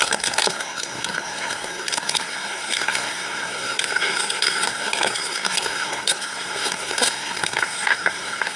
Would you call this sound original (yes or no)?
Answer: no